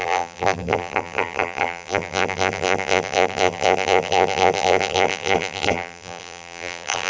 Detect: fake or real fake